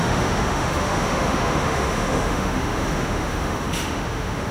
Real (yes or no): no